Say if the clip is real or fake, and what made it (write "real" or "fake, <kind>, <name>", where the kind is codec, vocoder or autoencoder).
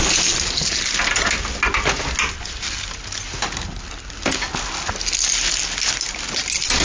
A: real